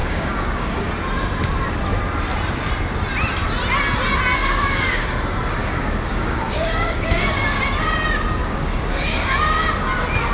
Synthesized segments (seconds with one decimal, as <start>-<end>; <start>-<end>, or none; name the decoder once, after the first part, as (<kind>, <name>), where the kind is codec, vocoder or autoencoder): 0.0-0.9 (codec, DAC); 4.4-5.0; 5.6-7.6; 8.4-9.6